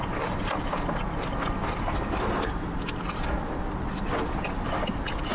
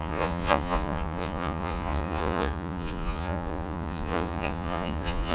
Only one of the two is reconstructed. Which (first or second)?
second